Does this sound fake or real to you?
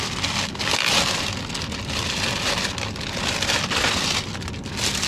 real